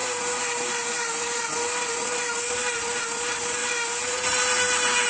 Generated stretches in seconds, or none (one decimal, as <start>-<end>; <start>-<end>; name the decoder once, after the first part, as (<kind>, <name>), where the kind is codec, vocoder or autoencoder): none